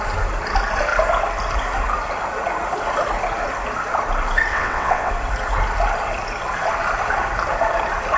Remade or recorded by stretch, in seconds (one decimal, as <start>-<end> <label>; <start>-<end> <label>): 0.0-4.5 recorded; 4.5-5.1 remade; 5.1-8.2 recorded